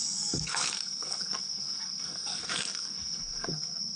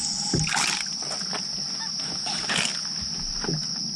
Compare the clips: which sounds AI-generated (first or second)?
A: first